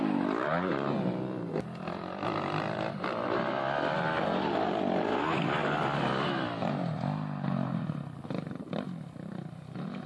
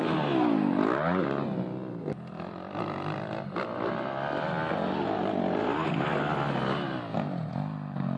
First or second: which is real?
second